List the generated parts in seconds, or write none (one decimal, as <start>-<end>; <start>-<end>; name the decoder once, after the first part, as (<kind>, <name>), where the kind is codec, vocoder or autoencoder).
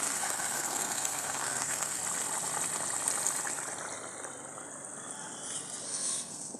0.0-2.0 (codec, SNAC); 5.9-6.6